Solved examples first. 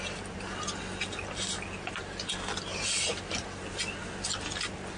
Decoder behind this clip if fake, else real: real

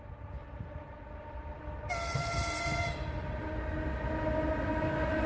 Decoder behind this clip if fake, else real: real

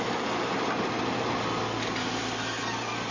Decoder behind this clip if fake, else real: real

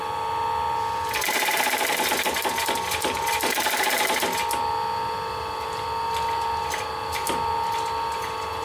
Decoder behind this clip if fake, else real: real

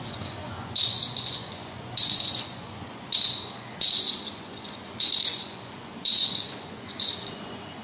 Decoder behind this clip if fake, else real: fake, vocoder, Vocos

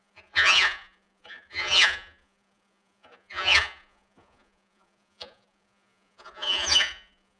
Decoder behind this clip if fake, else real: fake, vocoder, Vocos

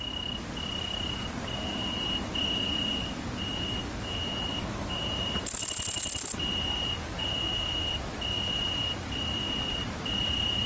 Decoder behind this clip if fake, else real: real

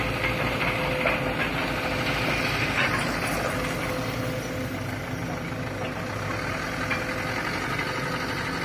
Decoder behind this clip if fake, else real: real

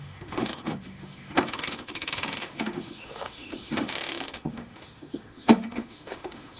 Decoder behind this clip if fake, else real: fake, autoencoder, DAC-VAE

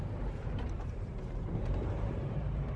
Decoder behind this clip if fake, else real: fake, vocoder, BigVGAN v2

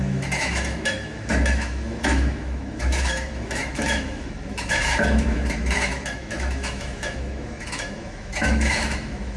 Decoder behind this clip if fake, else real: fake, autoencoder, DAC-VAE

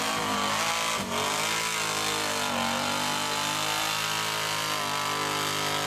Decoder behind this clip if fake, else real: real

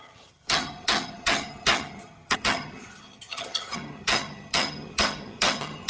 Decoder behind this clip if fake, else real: fake, vocoder, HiFi-GAN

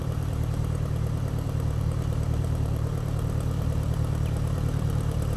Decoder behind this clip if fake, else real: fake, vocoder, BigVGAN v2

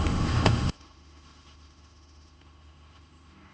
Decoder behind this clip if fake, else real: fake, autoencoder, DAC-VAE